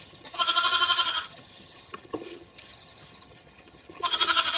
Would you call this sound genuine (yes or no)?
no